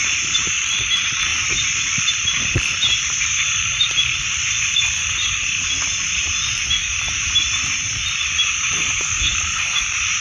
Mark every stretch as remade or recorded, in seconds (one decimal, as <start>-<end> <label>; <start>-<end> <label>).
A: 0.0-1.3 remade; 1.3-2.1 recorded; 2.1-10.2 remade